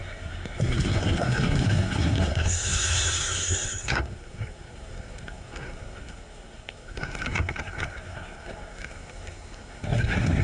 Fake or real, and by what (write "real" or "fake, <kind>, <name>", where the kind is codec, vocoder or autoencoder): fake, codec, SNAC